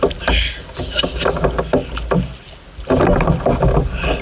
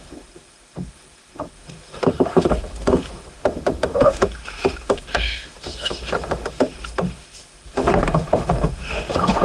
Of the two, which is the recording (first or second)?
first